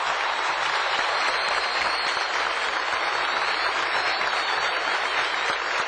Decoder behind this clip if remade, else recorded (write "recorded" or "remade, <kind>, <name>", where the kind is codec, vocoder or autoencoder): recorded